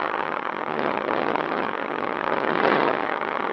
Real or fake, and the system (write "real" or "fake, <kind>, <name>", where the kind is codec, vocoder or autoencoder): fake, vocoder, HiFi-GAN